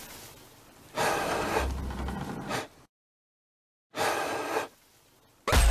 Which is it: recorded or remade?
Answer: recorded